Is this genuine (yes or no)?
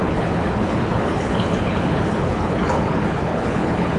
no